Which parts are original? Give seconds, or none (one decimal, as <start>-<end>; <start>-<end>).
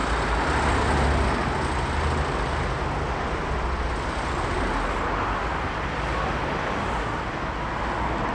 0.0-8.3